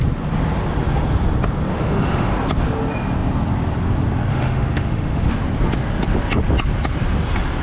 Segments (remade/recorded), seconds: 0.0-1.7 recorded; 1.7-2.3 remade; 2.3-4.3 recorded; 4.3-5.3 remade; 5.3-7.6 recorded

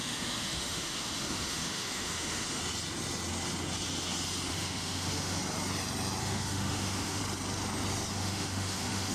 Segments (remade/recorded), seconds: 0.0-2.6 remade; 2.6-4.5 recorded; 4.5-5.4 remade; 5.4-6.2 recorded; 6.2-7.2 remade; 7.2-8.1 recorded; 8.1-9.1 remade

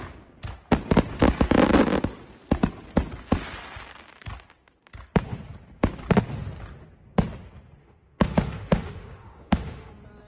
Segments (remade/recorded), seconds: 0.0-7.8 recorded; 7.8-9.9 remade; 9.9-10.3 recorded

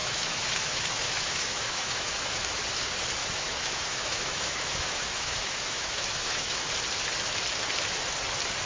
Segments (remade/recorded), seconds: 0.0-2.6 remade; 2.6-3.2 recorded; 3.2-6.6 remade; 6.6-8.7 recorded